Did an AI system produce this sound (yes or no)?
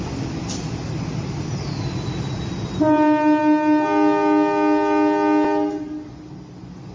no